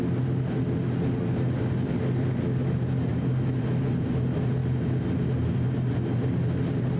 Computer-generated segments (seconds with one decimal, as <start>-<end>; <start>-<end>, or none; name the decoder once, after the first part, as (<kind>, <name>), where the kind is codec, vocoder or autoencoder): none